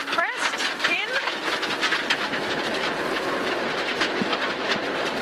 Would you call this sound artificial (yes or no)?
yes